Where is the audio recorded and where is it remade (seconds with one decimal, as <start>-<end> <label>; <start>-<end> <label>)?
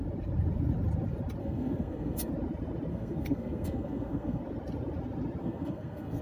0.0-1.4 recorded; 1.4-2.3 remade; 2.3-2.9 recorded; 2.9-4.4 remade; 4.4-5.4 recorded; 5.4-6.2 remade